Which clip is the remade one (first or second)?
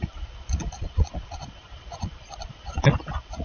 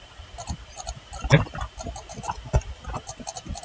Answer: first